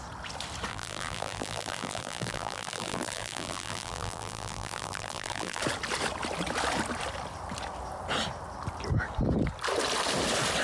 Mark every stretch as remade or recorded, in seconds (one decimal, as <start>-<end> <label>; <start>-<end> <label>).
0.0-0.7 recorded; 0.7-5.6 remade; 5.6-10.6 recorded